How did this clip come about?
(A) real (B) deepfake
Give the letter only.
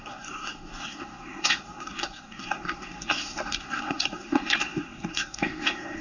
B